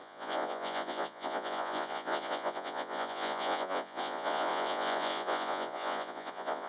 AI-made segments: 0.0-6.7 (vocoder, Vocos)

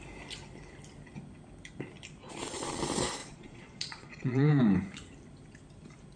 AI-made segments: 2.2-2.8 (vocoder, Vocos); 3.2-4.5

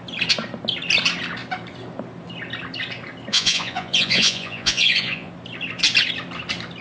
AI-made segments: 3.3-5.3 (vocoder, Vocos)

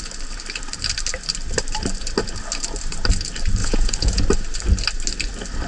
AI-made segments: 3.6-4.2 (vocoder, Vocos)

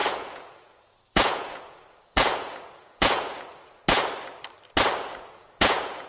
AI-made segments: 0.0-3.8 (vocoder, Vocos); 5.0-6.1

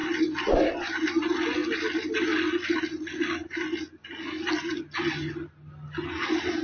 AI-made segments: none

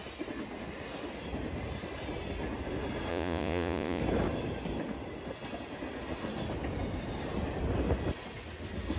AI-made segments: 3.1-4.0 (vocoder, Vocos)